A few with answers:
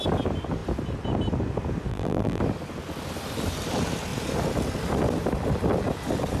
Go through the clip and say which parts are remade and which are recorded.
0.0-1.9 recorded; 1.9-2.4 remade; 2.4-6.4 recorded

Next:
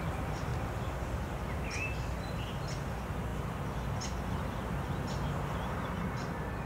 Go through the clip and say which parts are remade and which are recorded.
0.0-6.7 recorded

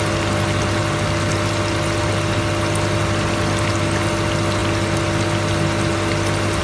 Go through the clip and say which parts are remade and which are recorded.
0.0-6.6 recorded

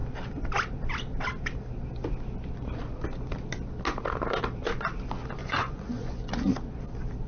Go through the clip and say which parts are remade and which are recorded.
0.0-5.4 recorded; 5.4-6.5 remade; 6.5-7.3 recorded

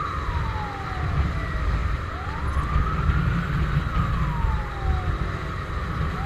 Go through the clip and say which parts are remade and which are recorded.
0.0-1.8 recorded; 1.8-2.4 remade; 2.4-6.3 recorded

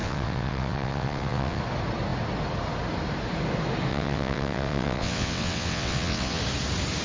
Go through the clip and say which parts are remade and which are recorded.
0.0-1.6 remade; 1.6-3.9 recorded; 3.9-6.4 remade; 6.4-7.0 recorded

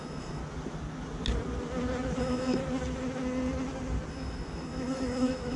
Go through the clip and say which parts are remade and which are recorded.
0.0-0.4 remade; 0.4-2.2 recorded; 2.2-2.6 remade; 2.6-4.1 recorded; 4.1-5.6 remade